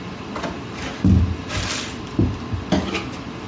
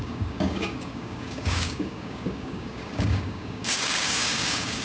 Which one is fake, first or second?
second